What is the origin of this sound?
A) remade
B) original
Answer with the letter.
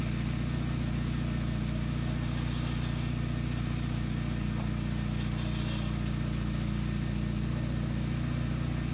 B